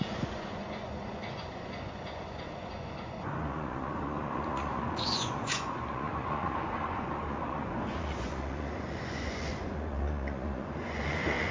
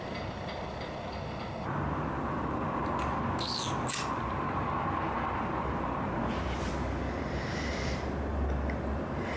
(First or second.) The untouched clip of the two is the second